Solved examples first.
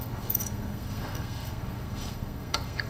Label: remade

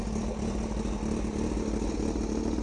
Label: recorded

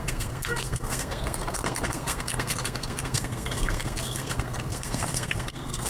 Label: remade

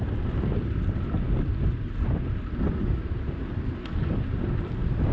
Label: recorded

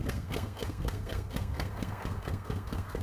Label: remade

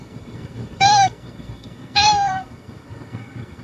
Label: remade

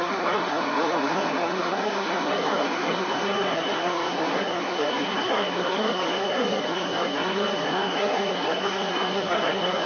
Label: remade